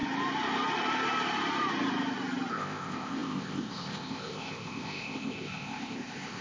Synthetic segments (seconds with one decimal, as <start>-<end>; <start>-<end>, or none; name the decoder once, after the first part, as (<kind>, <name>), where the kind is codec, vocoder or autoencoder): 2.5-6.4 (codec, ZipCodec)